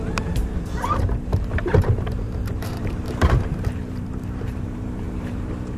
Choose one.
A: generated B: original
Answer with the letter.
A